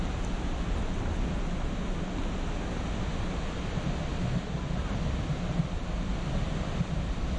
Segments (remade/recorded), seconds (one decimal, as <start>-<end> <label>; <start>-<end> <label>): 0.0-7.4 recorded